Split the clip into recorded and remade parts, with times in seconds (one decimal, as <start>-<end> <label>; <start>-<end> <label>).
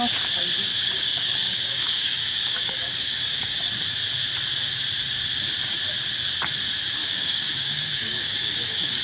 0.0-0.7 recorded; 0.7-3.7 remade; 3.7-7.0 recorded; 7.0-9.0 remade